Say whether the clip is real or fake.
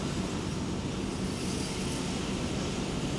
real